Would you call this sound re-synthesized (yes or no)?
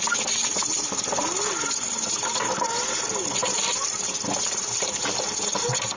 no